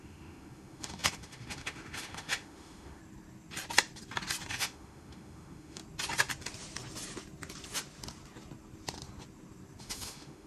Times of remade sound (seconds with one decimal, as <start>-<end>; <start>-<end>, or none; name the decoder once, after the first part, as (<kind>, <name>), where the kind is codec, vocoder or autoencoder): 0.0-3.0 (autoencoder, DAC-VAE); 4.5-5.8; 9.8-10.5

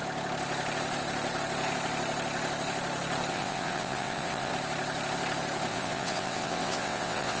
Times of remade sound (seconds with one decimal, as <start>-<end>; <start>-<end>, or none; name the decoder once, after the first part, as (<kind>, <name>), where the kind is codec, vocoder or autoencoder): 3.3-4.5 (vocoder, WaveNeXt); 5.7-7.4

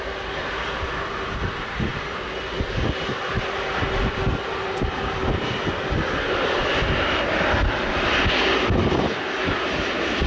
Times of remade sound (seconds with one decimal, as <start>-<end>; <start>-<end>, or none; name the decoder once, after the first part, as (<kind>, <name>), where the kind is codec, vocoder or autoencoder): none

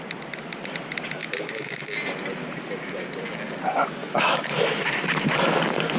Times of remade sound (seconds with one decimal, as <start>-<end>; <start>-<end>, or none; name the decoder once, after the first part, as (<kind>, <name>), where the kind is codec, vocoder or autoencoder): 1.2-1.7 (autoencoder, DAC-VAE); 4.0-4.6

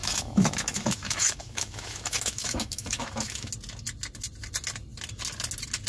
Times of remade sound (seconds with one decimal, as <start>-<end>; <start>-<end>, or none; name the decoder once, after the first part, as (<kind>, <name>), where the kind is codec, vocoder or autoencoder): 0.0-3.5 (autoencoder, DAC-VAE)

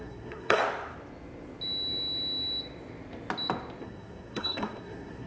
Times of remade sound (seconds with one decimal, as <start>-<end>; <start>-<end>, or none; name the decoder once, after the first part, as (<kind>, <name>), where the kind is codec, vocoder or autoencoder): 0.0-0.6 (codec, SNAC); 3.8-5.3